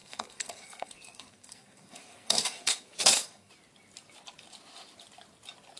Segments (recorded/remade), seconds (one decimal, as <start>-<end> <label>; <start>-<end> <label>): 0.0-3.5 remade; 3.5-5.8 recorded